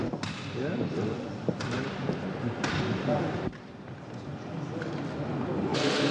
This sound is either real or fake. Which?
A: real